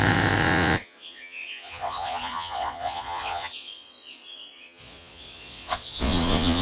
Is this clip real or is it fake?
fake